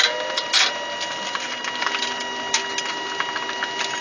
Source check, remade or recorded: recorded